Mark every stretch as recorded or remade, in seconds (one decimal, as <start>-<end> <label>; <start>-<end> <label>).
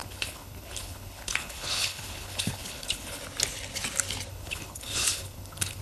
0.0-3.2 remade; 3.2-4.3 recorded; 4.3-5.8 remade